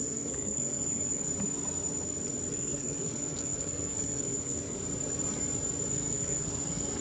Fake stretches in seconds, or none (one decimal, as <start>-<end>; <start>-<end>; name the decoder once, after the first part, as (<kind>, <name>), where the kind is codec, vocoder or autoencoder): 0.0-1.3 (codec, SNAC); 2.5-4.8; 5.9-7.0